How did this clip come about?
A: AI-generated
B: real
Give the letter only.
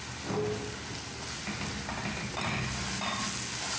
B